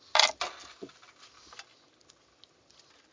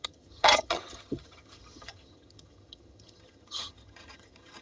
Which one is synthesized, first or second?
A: second